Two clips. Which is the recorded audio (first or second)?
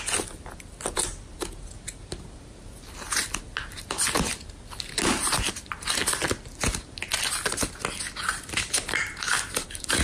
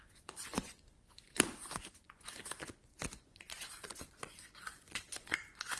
first